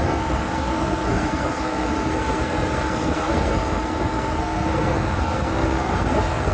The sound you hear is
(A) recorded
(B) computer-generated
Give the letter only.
B